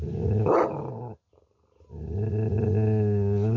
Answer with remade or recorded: recorded